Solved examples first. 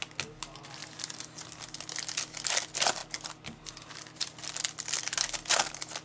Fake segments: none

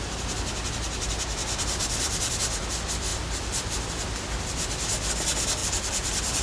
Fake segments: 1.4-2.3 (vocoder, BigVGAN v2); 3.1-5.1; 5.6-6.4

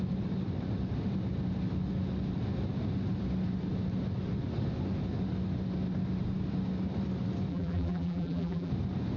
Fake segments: 7.5-8.7 (vocoder, BigVGAN v2)

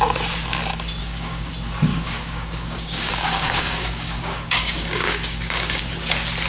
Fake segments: 1.0-1.5 (codec, DAC); 1.9-5.8

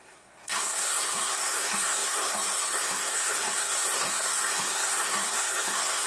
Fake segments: 0.0-6.1 (codec, SNAC)